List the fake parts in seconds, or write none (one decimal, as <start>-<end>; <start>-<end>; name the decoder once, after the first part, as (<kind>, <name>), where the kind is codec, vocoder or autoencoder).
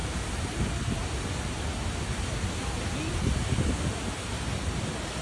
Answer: none